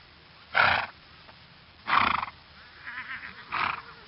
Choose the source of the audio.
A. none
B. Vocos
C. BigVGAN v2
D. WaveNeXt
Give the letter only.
A